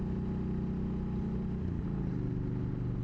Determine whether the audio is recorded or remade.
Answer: recorded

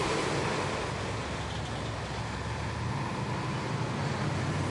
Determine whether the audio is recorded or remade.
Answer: recorded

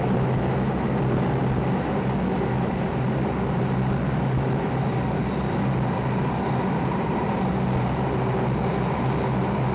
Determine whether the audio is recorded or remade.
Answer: recorded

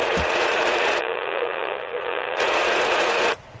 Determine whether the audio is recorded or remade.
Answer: remade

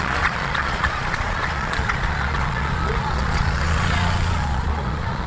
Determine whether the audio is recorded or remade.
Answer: remade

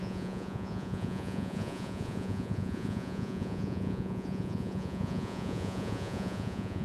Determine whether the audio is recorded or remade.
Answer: remade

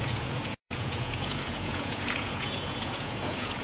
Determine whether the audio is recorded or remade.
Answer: remade